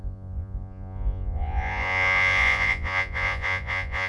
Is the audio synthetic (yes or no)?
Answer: yes